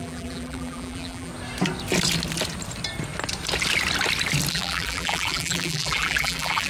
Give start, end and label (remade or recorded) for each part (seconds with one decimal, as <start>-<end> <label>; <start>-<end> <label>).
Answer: 0.0-1.3 remade; 1.3-4.5 recorded; 4.5-6.7 remade